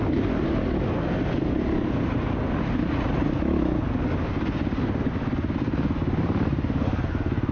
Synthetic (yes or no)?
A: no